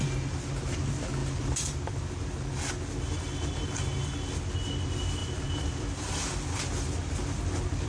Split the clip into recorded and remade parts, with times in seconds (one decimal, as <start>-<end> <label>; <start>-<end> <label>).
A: 0.0-1.2 recorded; 1.2-1.8 remade; 1.8-5.2 recorded; 5.2-7.4 remade; 7.4-7.9 recorded